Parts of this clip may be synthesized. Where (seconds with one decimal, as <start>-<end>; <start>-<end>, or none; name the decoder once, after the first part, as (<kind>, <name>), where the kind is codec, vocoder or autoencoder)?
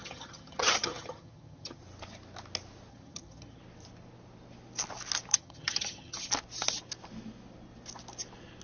0.0-1.8 (vocoder, HiFi-GAN); 2.9-3.6; 5.3-6.3